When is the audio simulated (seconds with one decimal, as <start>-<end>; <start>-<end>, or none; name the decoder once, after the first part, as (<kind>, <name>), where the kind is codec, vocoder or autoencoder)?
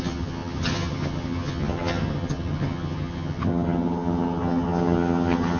0.0-5.6 (vocoder, HiFi-GAN)